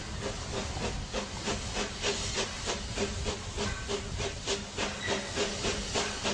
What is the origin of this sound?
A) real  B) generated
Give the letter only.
A